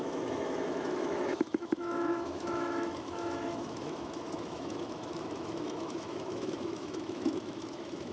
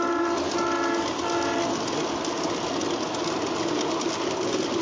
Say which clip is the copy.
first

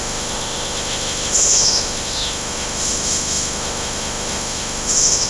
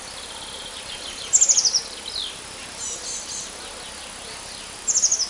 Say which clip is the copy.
first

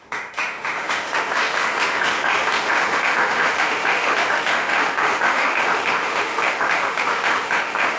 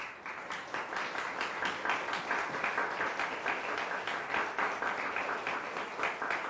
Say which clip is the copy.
first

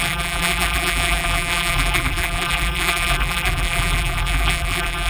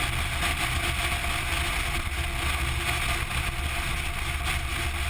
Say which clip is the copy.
first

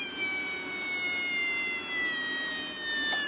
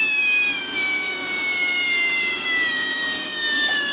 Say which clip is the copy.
second